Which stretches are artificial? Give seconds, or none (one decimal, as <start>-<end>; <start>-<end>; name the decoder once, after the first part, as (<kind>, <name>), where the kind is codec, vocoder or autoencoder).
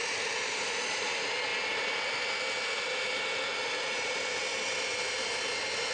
none